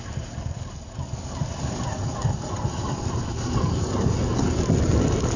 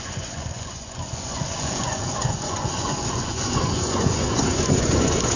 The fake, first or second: second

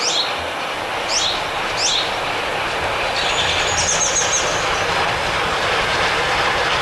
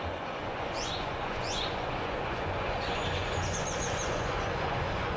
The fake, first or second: second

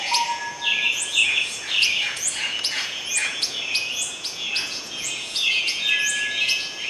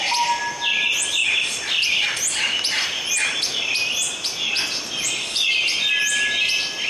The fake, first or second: first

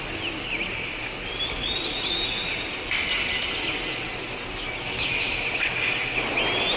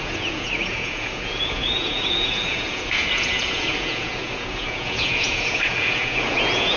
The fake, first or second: second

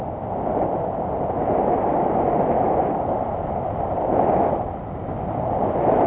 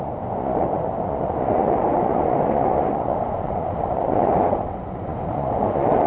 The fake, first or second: second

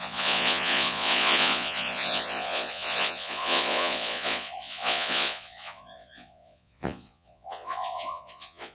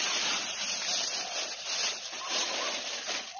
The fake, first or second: first